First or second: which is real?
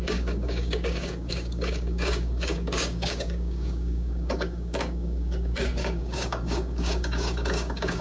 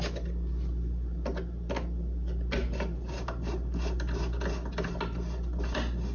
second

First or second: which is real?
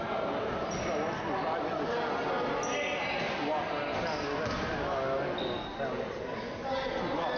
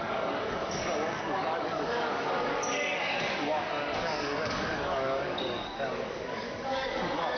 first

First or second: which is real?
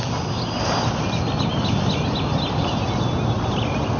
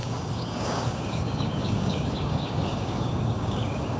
first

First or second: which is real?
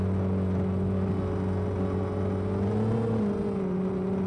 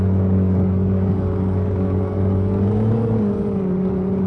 first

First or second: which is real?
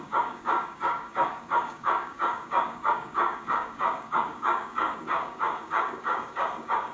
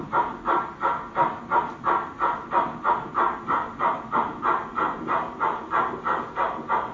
second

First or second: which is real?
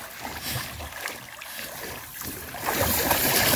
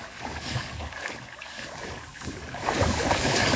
first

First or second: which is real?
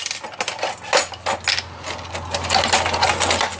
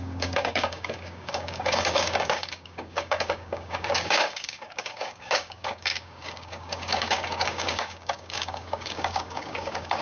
first